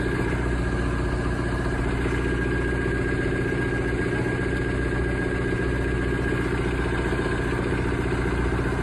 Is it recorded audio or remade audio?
recorded